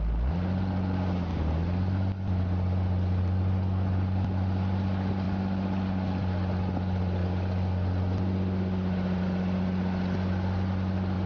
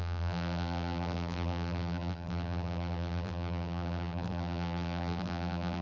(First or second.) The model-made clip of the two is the second